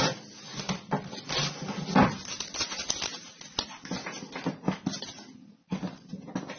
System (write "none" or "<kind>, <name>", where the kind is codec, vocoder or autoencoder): none